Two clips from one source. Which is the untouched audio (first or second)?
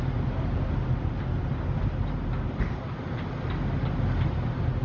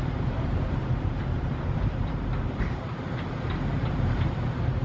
first